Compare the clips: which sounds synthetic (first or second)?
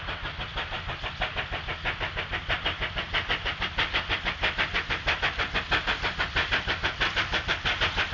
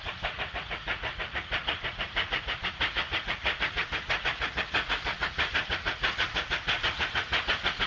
second